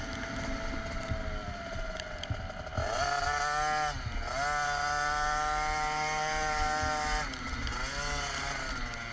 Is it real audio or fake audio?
real